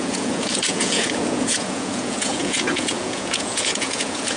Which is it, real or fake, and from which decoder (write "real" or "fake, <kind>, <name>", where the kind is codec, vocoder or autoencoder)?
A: fake, vocoder, Vocos